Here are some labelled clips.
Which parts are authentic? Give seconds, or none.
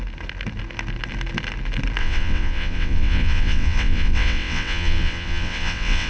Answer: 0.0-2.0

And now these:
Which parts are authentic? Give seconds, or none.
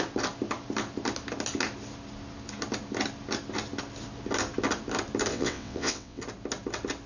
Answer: 0.0-5.3; 6.2-7.1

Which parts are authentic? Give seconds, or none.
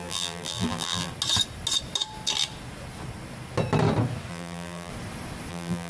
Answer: 1.1-4.3; 4.9-5.5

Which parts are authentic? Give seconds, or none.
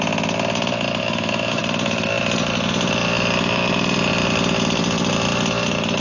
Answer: 0.0-1.0; 1.6-6.0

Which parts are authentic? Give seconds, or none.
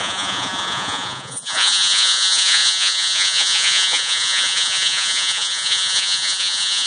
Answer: none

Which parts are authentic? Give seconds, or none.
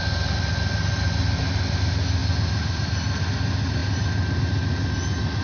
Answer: 0.0-5.4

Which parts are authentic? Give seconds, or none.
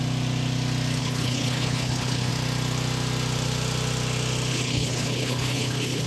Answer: 0.0-1.0; 2.3-4.5